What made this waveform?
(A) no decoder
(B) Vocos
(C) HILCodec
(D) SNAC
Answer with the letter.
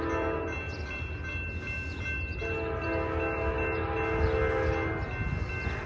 A